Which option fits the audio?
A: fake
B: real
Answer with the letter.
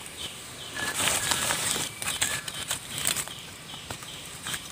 A